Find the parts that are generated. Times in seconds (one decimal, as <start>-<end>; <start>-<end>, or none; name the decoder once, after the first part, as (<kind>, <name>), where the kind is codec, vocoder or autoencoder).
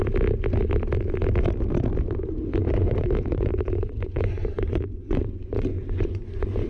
2.6-6.7 (vocoder, Vocos)